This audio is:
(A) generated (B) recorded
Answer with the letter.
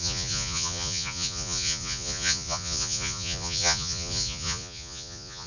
A